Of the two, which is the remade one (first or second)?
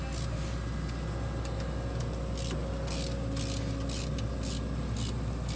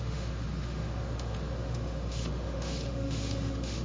second